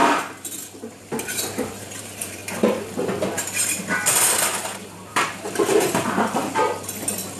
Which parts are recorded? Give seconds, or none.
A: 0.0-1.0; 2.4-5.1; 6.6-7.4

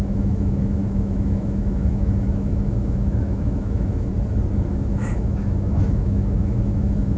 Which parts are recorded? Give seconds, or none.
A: 4.1-4.7

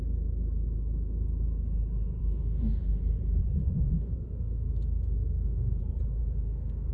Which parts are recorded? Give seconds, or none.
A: 0.0-2.2; 3.0-3.6; 5.8-6.2

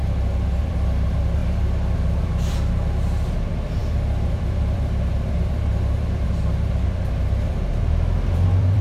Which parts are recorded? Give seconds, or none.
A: 0.0-0.6

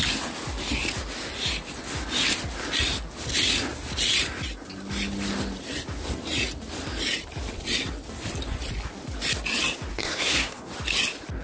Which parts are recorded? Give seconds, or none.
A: 0.0-9.9; 10.7-11.4

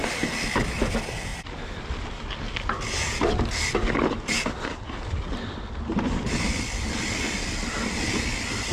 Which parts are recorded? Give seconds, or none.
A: 0.0-1.3; 1.8-5.9; 6.5-8.7

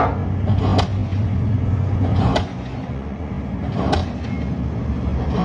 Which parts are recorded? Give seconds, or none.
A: 0.0-1.0; 3.3-5.4